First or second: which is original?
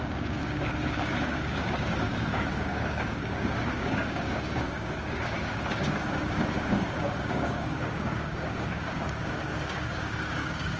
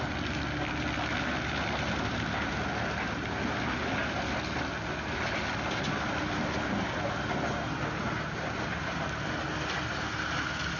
second